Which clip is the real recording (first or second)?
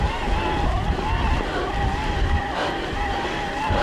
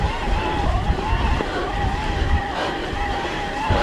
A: first